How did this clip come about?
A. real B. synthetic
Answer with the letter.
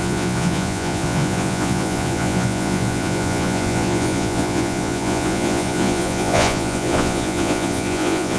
B